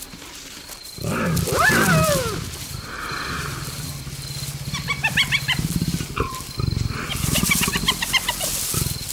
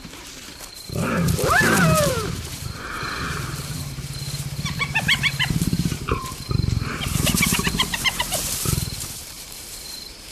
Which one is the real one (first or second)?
first